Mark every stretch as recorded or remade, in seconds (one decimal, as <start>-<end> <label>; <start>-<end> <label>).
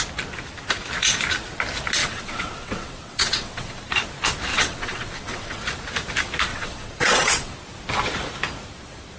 0.0-2.0 recorded; 2.0-3.8 remade; 3.8-4.5 recorded; 4.5-5.6 remade; 5.6-6.5 recorded; 6.5-7.5 remade; 7.5-9.2 recorded